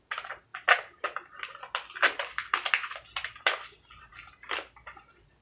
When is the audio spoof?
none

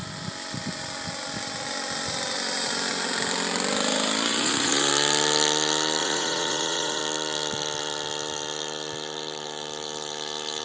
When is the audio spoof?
4.3-4.9 (vocoder, Vocos); 6.0-7.0

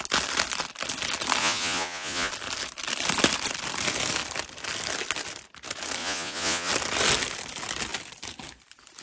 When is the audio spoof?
1.4-2.3 (vocoder, Vocos); 6.0-6.7

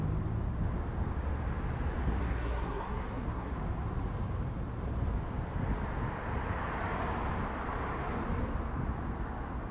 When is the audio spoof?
2.2-3.5 (codec, SNAC)

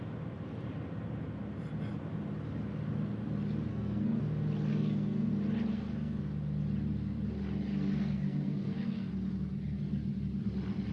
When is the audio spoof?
3.7-4.2 (codec, SNAC); 4.7-5.3; 5.7-6.2; 7.7-9.1

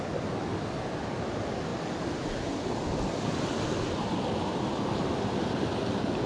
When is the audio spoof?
none

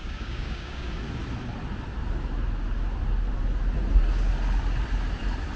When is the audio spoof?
0.0-0.9 (codec, DAC)